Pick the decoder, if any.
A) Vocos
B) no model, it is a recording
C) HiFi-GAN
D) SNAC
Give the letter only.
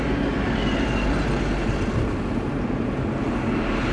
B